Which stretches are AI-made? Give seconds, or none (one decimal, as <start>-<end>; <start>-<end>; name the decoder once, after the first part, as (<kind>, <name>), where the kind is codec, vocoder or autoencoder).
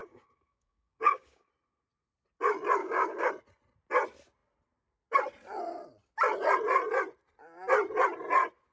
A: 0.0-1.5 (codec, DAC); 2.8-3.3